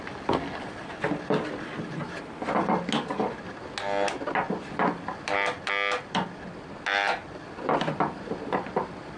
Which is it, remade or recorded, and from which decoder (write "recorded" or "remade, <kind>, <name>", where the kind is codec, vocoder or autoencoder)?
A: recorded